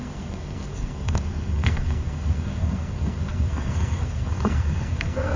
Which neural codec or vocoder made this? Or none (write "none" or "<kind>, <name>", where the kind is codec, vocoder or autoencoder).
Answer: codec, SNAC